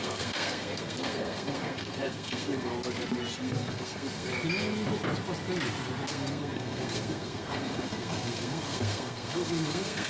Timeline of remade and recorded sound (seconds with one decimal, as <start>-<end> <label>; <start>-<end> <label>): 0.0-2.7 remade; 2.7-3.4 recorded; 3.4-4.3 remade; 4.3-6.1 recorded; 6.1-10.1 remade